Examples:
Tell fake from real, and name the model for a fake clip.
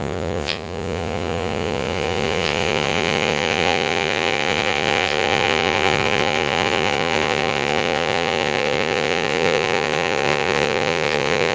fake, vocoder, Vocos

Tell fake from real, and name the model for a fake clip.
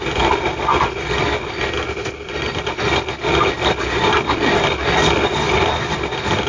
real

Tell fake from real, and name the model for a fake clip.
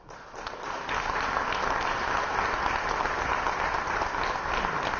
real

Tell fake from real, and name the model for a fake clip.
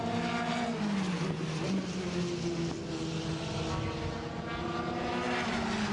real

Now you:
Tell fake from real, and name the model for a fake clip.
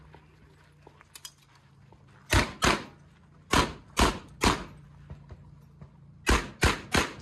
real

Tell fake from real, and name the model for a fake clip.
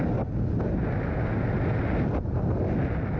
real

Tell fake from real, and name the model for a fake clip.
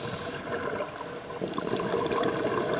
real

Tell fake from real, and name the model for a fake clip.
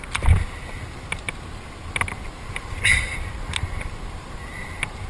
real